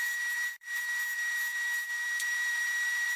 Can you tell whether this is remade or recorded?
remade